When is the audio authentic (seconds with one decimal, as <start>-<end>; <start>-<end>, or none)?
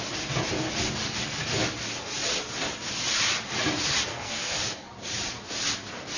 0.0-4.1; 4.9-6.2